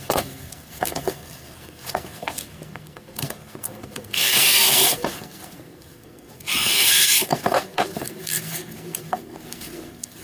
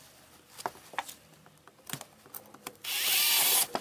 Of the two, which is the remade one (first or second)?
first